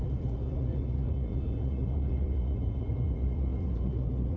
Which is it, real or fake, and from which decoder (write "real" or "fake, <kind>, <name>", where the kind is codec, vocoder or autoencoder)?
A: fake, vocoder, Vocos